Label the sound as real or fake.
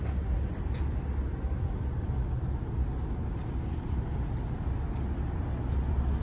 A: real